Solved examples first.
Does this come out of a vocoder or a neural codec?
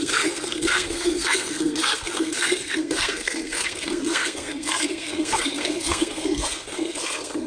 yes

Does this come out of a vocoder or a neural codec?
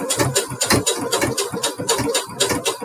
no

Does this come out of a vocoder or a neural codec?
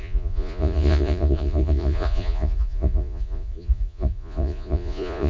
yes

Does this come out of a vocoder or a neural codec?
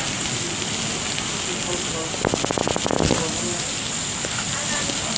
no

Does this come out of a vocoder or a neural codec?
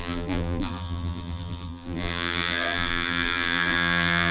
yes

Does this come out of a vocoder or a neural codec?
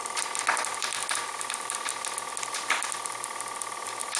no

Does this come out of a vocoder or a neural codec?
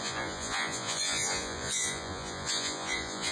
yes